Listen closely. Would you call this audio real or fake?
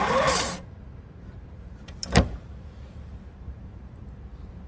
fake